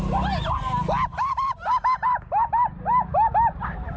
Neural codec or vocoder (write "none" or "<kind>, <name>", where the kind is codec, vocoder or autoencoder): none